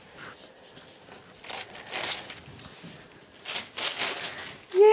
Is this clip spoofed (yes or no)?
no